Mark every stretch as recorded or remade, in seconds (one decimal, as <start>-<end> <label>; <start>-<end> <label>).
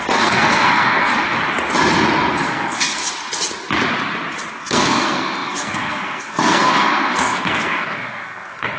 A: 0.0-1.1 remade; 1.1-2.3 recorded; 2.3-3.0 remade; 3.0-4.5 recorded; 4.5-8.8 remade